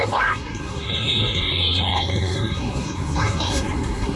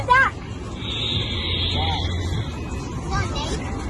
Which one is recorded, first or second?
second